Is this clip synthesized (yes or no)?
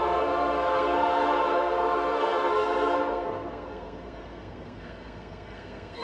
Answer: yes